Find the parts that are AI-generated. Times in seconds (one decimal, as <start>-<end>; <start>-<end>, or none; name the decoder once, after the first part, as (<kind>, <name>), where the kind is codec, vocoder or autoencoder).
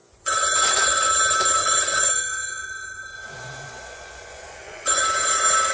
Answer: 0.0-1.1 (vocoder, Vocos); 1.6-5.0